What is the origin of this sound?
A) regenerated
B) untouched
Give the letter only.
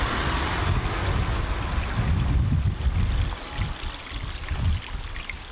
B